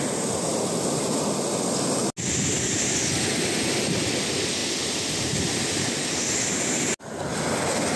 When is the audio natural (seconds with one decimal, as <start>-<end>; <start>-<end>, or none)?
0.0-8.0